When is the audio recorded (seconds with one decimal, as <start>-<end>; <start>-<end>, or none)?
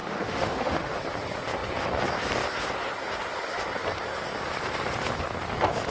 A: 1.0-5.9